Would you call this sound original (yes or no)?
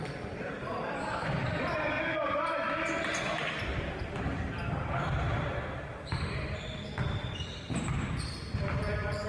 no